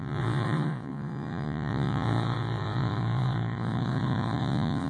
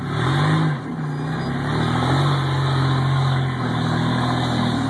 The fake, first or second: first